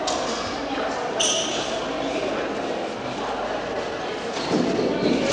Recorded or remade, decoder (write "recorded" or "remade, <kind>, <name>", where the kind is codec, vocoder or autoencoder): recorded